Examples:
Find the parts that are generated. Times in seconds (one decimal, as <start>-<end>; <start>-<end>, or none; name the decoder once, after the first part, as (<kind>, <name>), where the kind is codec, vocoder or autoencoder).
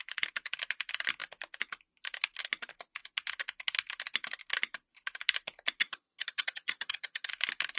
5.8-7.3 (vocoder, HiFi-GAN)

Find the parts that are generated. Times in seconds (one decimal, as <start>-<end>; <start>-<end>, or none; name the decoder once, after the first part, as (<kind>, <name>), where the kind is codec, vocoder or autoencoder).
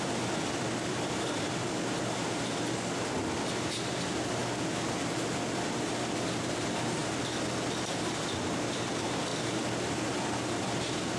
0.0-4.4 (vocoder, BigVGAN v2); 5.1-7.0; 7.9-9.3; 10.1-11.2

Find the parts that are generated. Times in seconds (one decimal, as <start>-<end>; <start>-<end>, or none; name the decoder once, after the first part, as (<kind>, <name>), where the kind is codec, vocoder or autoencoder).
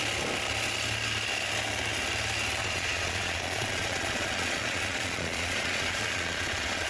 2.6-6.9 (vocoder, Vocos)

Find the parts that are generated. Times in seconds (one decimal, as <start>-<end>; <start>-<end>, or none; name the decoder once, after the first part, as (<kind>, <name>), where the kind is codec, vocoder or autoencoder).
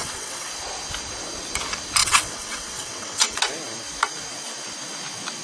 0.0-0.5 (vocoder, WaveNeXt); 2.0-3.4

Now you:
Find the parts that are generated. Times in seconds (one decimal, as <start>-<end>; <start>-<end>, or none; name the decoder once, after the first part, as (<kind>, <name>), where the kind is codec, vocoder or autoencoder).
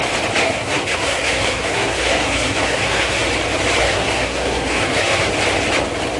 0.4-3.2 (codec, SNAC); 3.8-5.3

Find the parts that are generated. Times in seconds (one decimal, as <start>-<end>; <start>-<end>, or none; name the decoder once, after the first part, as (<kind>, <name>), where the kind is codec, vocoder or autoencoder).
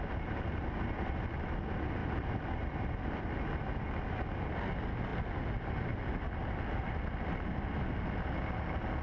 none